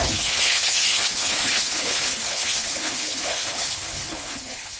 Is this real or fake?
fake